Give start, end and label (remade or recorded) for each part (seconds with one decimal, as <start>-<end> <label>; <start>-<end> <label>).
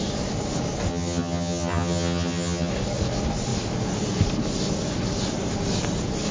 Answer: 0.0-0.9 recorded; 0.9-2.7 remade; 2.7-6.3 recorded